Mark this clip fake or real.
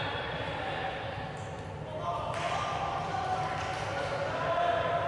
real